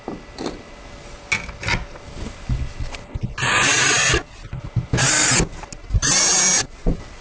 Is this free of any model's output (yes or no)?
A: yes